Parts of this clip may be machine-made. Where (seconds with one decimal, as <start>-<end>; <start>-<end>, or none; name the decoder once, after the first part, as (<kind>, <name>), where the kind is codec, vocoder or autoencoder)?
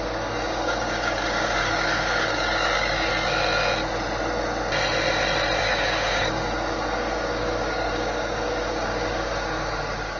0.0-3.1 (codec, DAC); 5.6-10.2